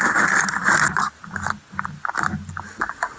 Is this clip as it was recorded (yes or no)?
yes